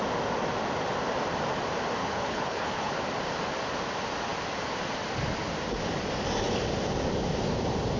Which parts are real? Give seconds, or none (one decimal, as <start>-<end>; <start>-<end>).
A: 0.0-2.0; 2.9-8.0